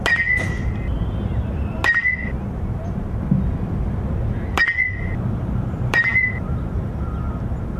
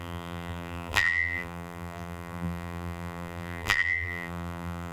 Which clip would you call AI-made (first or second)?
second